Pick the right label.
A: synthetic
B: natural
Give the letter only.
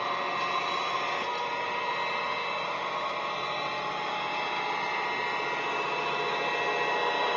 B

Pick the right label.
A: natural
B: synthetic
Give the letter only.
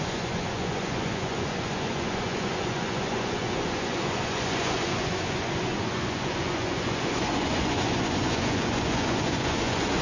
B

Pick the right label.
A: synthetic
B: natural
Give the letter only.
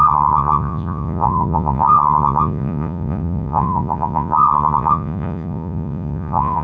A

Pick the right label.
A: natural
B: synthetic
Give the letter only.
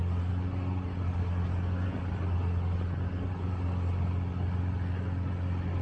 A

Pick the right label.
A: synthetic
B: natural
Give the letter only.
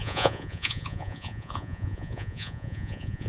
A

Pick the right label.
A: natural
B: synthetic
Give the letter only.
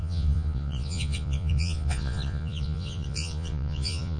B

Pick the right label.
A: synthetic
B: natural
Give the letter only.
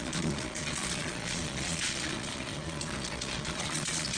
A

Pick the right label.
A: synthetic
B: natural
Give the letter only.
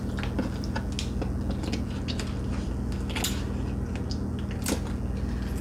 B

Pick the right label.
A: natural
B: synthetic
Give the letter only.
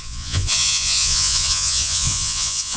B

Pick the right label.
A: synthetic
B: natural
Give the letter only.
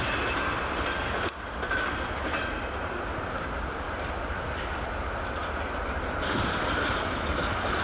B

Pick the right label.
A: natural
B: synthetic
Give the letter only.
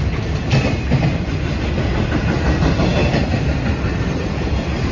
A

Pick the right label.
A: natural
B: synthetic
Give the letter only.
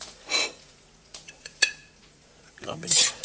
B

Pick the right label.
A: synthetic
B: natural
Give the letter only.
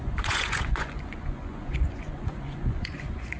A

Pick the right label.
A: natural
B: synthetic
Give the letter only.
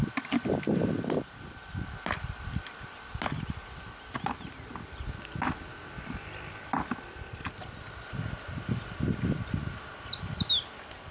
A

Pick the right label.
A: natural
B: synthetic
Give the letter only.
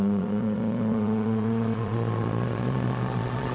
B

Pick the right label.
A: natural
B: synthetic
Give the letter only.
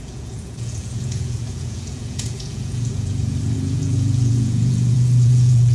B